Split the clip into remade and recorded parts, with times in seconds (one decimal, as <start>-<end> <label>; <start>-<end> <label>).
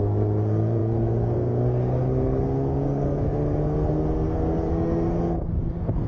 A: 0.0-6.1 remade